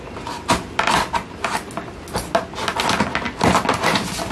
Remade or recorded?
recorded